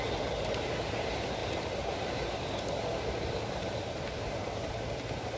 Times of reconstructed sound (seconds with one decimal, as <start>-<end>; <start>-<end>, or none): none